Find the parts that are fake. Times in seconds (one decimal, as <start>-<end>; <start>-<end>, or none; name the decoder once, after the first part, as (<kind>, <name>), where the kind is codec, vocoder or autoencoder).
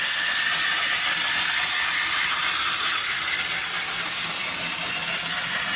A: 2.6-3.2 (vocoder, BigVGAN v2)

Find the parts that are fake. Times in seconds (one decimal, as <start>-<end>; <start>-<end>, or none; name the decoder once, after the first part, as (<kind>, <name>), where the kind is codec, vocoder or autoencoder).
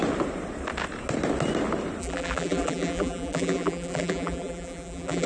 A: 2.0-5.3 (vocoder, BigVGAN v2)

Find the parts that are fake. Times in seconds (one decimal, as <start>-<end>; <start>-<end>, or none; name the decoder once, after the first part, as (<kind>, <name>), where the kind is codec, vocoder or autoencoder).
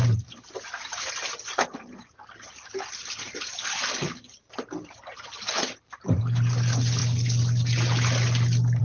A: none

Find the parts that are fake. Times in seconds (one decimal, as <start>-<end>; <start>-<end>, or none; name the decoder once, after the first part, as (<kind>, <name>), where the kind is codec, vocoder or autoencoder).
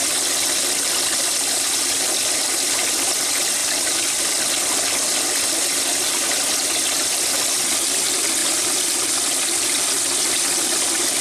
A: 3.6-4.2 (vocoder, BigVGAN v2); 8.4-9.8